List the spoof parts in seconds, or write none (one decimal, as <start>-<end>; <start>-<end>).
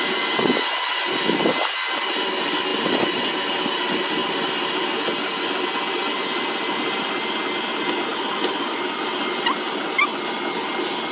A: none